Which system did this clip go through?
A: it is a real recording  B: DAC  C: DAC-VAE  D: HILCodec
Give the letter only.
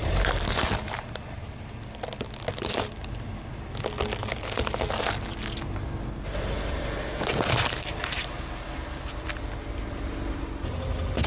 A